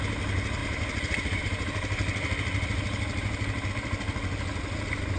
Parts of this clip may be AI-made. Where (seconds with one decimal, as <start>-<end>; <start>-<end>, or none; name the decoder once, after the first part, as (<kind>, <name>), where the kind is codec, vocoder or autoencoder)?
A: 0.6-3.7 (vocoder, BigVGAN v2)